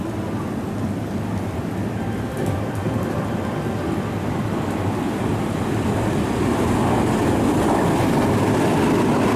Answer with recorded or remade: recorded